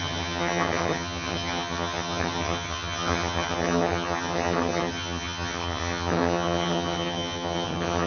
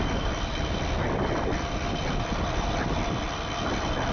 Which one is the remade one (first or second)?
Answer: first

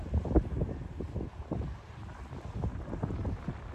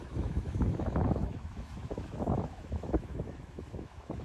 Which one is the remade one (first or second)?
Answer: second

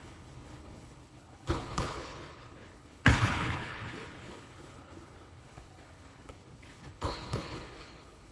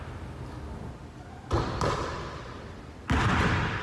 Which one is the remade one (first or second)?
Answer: first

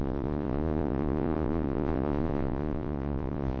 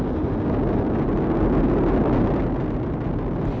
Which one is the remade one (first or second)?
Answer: first